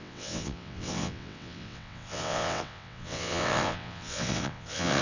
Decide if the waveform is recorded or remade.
remade